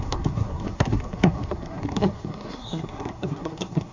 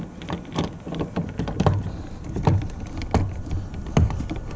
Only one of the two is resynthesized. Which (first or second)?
first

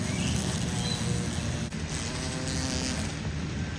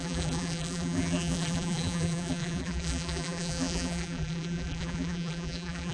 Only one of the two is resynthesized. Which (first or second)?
second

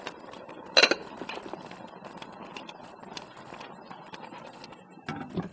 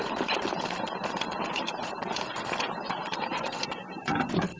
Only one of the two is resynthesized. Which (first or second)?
second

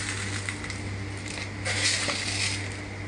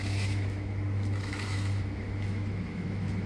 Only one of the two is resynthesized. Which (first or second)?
second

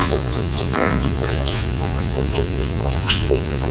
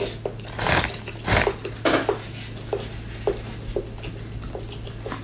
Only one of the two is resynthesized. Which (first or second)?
first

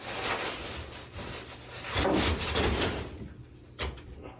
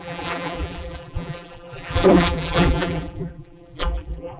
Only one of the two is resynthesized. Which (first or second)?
second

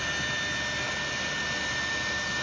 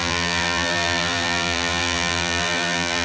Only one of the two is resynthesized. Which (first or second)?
second